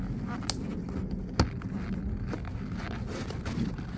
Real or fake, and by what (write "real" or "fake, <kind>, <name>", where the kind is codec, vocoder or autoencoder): real